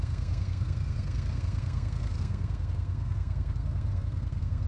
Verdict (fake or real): fake